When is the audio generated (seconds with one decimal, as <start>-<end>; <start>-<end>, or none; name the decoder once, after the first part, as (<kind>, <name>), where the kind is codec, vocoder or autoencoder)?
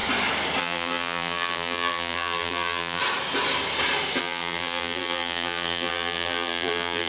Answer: 0.6-3.0 (vocoder, BigVGAN v2); 4.2-7.1